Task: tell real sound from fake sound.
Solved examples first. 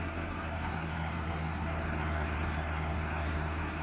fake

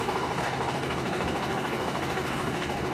fake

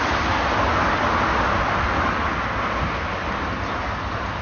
real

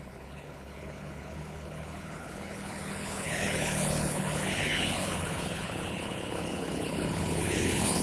fake